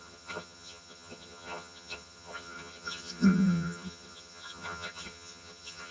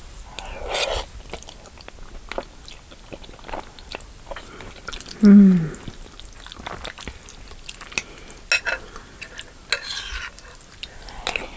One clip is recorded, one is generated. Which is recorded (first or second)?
second